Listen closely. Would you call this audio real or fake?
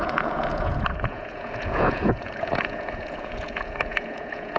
fake